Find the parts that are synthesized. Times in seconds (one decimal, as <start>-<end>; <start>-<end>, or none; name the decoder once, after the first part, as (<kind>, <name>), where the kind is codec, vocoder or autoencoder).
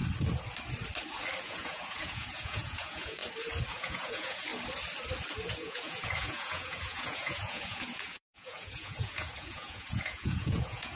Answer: 1.4-3.2 (vocoder, Vocos); 3.7-4.5; 5.5-11.0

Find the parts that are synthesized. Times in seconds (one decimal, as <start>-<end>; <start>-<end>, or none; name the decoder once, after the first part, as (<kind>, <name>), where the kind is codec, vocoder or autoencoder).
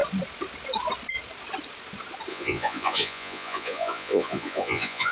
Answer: 2.3-5.1 (vocoder, Vocos)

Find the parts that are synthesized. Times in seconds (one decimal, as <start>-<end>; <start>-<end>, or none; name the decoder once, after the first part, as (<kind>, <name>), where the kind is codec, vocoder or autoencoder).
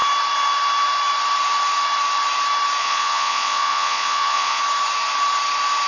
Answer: 2.8-4.6 (vocoder, Vocos)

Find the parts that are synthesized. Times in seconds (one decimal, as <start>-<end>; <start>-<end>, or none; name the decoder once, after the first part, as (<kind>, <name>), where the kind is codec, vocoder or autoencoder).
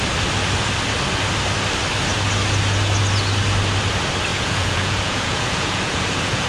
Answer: 4.3-6.5 (vocoder, Vocos)